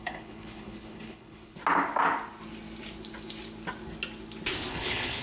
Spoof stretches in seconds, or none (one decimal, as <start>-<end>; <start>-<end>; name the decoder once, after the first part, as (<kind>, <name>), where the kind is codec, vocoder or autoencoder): 0.0-1.6 (codec, HILCodec); 4.7-5.2